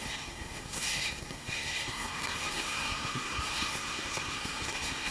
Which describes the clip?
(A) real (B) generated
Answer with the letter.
B